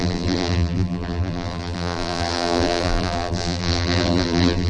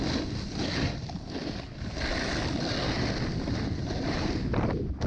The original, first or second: second